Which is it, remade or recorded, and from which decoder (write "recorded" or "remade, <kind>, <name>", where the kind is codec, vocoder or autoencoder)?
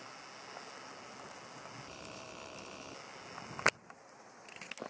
recorded